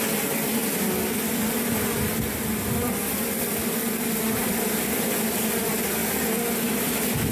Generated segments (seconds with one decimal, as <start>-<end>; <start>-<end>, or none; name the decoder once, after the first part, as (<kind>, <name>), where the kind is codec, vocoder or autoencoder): 0.0-0.6 (vocoder, BigVGAN v2); 4.0-6.0; 6.8-7.3